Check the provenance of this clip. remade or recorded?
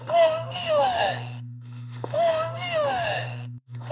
remade